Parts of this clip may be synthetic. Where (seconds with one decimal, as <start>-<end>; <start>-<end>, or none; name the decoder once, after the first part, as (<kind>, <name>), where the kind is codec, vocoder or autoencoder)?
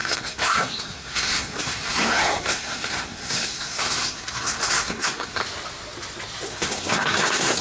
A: 0.0-5.4 (codec, SNAC); 6.5-7.6